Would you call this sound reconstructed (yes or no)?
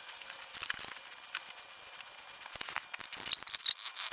no